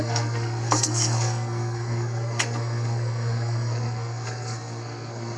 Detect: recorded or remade remade